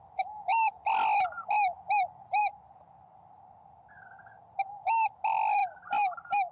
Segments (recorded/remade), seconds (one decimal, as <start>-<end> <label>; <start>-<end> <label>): 0.0-6.5 recorded